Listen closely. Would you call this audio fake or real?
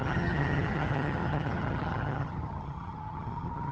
fake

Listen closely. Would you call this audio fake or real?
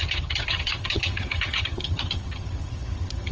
fake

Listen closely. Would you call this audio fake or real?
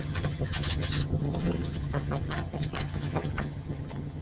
fake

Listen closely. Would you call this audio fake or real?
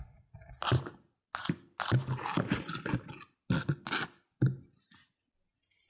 real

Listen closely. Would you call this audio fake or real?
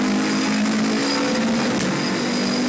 real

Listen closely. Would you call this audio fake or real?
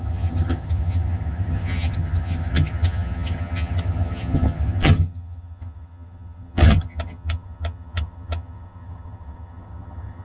fake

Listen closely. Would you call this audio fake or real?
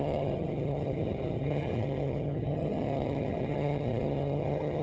fake